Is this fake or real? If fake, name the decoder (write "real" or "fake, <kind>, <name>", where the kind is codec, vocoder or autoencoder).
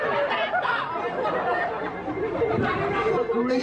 real